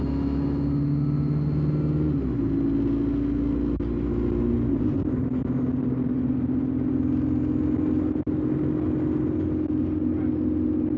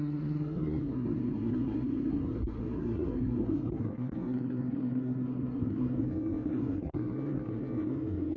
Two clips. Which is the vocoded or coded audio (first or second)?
second